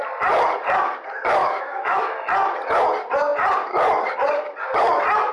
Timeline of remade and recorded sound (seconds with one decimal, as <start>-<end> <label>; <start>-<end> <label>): 0.0-1.4 recorded; 1.4-2.0 remade; 2.0-5.3 recorded